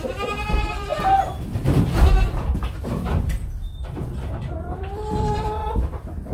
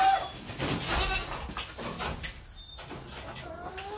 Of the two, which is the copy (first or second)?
first